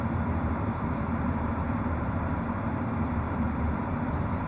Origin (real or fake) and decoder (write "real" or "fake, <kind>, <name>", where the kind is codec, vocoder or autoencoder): fake, vocoder, BigVGAN v2